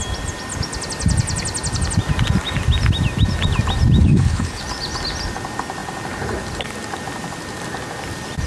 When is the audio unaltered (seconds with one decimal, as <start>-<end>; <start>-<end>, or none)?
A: 0.0-4.0; 4.6-8.5

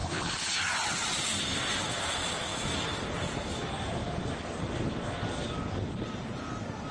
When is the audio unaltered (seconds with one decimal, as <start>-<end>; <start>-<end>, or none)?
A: 0.5-6.9

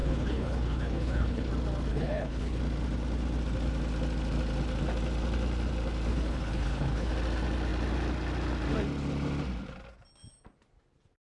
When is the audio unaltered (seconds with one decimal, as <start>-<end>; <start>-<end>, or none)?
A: 1.5-1.9; 2.6-6.1; 7.1-11.3

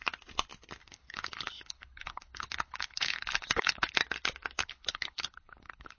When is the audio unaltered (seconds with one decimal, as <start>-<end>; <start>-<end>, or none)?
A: 0.0-0.8; 4.0-4.6

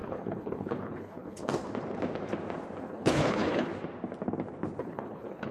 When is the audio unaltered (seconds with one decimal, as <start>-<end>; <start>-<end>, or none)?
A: 1.5-2.8; 3.7-4.8

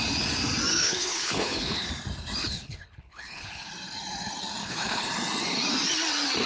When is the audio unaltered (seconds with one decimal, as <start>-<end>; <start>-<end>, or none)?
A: 0.0-0.7; 1.9-2.4; 3.7-4.6; 5.1-6.5

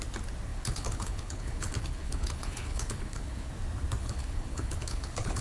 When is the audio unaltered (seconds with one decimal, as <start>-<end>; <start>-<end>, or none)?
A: 0.0-0.5; 3.5-4.0